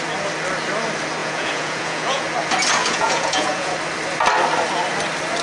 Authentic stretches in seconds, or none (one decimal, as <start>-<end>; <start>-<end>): 0.0-1.2; 2.2-2.8; 3.7-5.4

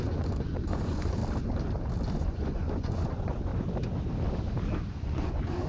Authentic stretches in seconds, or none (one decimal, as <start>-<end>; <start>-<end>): 1.2-2.1; 3.5-4.9

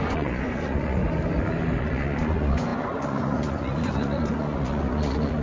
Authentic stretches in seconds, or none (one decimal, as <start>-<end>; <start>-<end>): 1.0-1.8

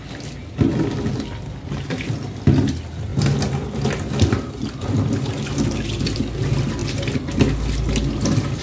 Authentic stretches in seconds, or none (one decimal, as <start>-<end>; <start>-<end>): 0.0-8.6

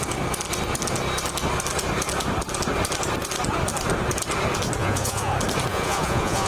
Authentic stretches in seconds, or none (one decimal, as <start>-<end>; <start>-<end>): 0.0-4.8; 5.3-5.7

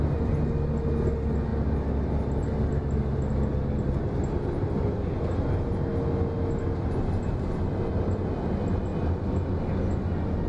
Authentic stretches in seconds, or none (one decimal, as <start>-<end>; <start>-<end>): 0.0-10.5